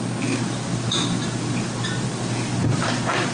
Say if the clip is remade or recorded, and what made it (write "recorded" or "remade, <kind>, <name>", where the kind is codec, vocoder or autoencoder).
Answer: remade, vocoder, BigVGAN v2